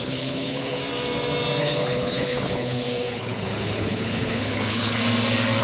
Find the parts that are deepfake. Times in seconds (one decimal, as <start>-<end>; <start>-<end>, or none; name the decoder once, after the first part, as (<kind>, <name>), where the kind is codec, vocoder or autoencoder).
0.0-0.8 (codec, HILCodec); 1.6-5.0